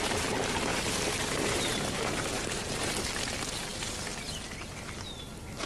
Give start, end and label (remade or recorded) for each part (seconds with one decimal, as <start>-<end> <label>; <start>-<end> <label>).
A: 0.0-0.7 recorded; 0.7-2.9 remade; 2.9-5.7 recorded